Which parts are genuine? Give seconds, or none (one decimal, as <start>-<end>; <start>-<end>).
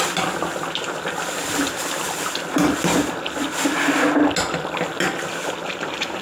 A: 0.0-1.4; 2.0-5.6